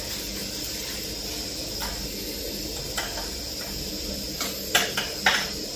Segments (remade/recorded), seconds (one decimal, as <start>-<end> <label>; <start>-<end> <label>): 0.0-5.8 recorded